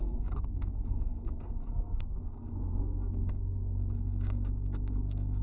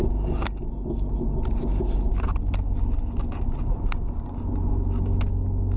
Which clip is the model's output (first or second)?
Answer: first